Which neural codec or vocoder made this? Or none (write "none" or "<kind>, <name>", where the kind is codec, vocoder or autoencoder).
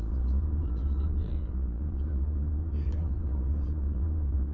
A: vocoder, Vocos